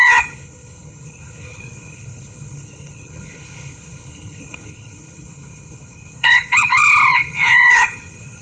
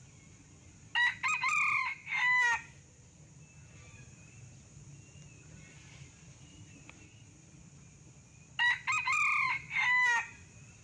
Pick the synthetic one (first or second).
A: first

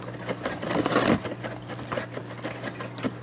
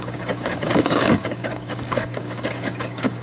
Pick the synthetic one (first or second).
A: second